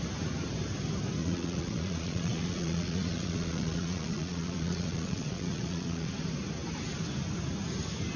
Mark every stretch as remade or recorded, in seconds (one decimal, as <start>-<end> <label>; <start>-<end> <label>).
0.0-1.2 recorded; 1.2-6.1 remade; 6.1-8.2 recorded